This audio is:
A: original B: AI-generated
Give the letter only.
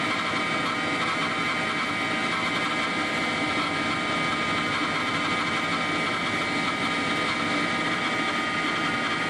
A